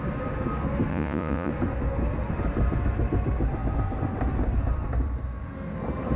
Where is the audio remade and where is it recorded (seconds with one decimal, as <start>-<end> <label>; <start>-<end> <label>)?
0.0-0.9 recorded; 0.9-1.5 remade; 1.5-6.2 recorded